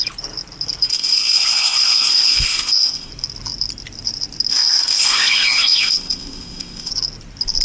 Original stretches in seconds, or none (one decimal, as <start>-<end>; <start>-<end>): 0.0-0.9; 3.1-4.5; 6.9-7.6